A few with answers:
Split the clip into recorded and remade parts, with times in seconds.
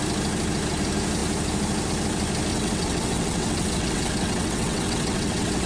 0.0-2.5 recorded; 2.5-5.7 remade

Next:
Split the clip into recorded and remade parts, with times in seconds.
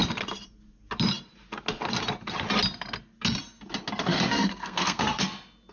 0.0-4.3 recorded; 4.3-5.2 remade; 5.2-5.7 recorded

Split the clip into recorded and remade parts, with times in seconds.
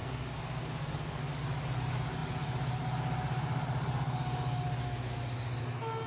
0.0-1.2 remade; 1.2-6.1 recorded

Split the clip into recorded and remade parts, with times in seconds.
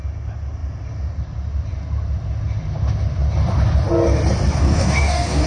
0.0-4.6 recorded; 4.6-5.5 remade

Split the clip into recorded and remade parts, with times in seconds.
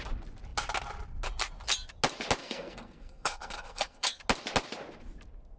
0.0-2.4 recorded; 2.4-4.2 remade; 4.2-5.6 recorded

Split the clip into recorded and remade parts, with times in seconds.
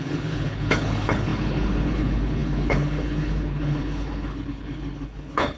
0.0-5.6 remade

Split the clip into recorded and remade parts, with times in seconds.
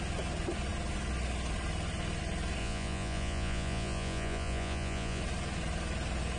0.0-2.6 recorded; 2.6-5.2 remade; 5.2-6.4 recorded